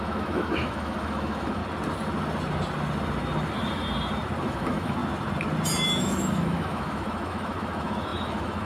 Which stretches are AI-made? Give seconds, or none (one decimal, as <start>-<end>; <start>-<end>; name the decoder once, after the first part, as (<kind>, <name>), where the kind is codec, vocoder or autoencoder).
0.0-1.6 (autoencoder, DAC-VAE); 4.5-5.0; 6.0-8.7